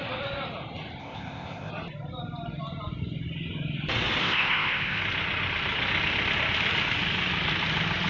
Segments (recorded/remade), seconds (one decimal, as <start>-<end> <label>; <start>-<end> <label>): 0.0-1.0 recorded; 1.0-1.7 remade; 1.7-4.2 recorded; 4.2-5.0 remade; 5.0-8.1 recorded